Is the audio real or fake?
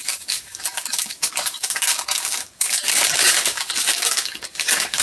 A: fake